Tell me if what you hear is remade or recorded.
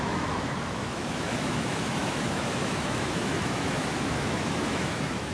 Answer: remade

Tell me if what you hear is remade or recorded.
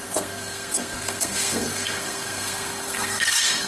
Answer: remade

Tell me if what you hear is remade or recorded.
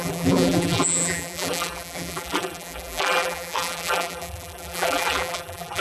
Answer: remade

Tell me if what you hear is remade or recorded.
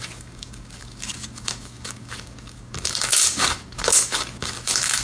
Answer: remade